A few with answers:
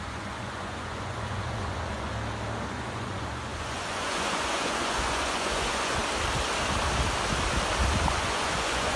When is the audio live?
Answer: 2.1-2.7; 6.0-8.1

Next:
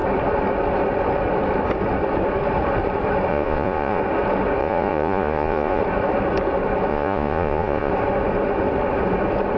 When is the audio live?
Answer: 0.0-3.3; 4.0-4.6; 5.8-6.9; 7.9-9.6

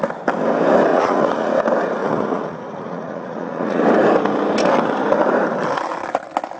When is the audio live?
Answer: 0.0-0.9; 1.5-2.0; 3.8-6.6

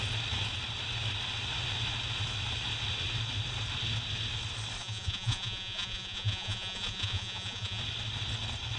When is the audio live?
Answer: 0.0-4.8; 7.8-8.8

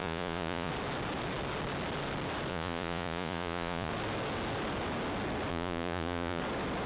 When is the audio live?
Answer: 0.7-2.5; 3.9-5.5; 6.4-6.9

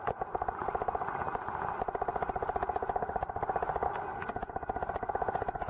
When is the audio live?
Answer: 0.0-5.7

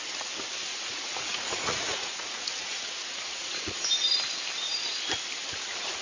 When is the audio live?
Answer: 0.0-0.7; 3.9-6.0

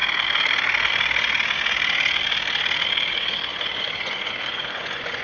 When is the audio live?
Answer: 0.0-3.1